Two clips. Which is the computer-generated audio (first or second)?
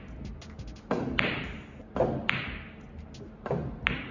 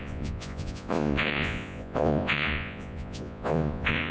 second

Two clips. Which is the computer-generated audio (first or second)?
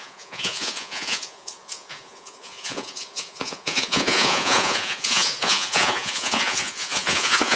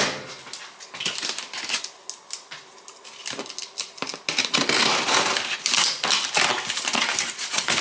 first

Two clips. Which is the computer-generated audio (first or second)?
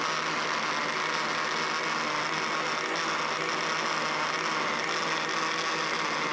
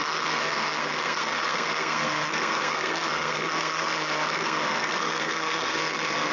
second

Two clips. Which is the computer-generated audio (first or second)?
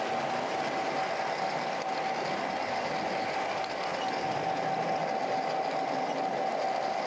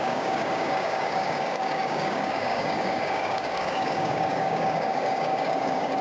second